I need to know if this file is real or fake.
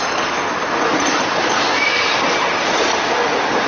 real